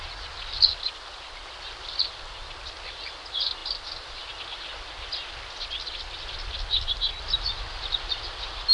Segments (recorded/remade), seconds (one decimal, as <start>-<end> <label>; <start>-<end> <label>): 0.0-8.7 recorded